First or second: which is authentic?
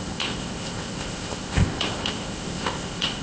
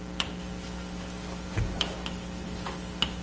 second